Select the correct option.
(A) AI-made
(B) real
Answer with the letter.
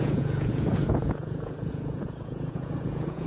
A